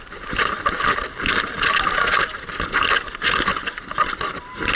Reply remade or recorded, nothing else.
recorded